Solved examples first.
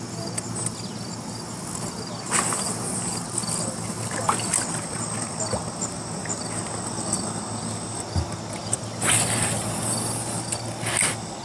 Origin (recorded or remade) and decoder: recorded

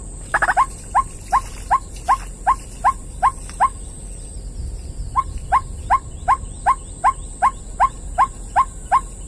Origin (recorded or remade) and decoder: recorded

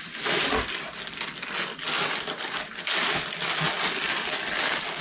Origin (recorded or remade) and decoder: recorded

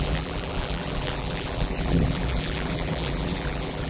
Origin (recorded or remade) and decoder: remade, vocoder, BigVGAN v2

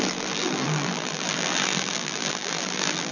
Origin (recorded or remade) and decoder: remade, vocoder, BigVGAN v2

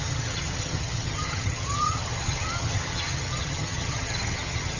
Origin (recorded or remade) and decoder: remade, vocoder, HiFi-GAN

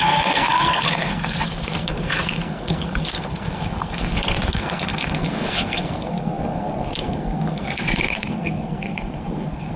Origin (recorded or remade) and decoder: remade, codec, SNAC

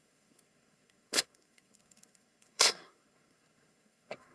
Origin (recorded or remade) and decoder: remade, codec, SNAC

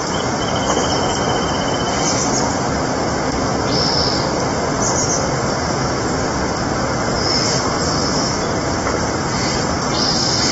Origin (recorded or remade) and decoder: recorded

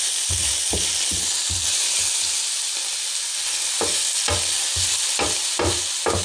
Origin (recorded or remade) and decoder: recorded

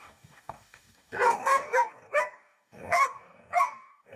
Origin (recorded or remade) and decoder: remade, codec, DAC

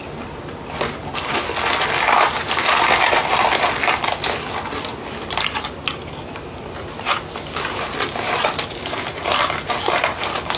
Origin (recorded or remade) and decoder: recorded